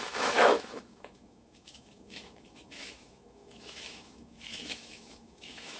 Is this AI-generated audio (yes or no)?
yes